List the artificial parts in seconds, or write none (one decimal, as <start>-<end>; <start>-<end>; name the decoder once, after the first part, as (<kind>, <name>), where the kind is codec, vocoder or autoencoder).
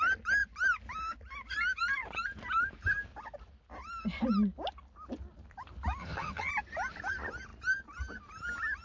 6.0-6.5 (vocoder, HiFi-GAN)